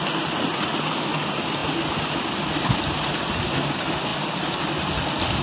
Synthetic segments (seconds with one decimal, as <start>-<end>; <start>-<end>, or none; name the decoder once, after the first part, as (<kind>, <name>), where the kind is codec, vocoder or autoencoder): none